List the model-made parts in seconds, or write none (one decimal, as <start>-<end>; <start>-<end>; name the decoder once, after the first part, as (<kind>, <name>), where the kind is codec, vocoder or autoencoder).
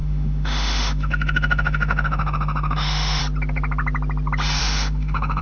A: 0.0-3.2 (autoencoder, DAC-VAE); 4.6-5.4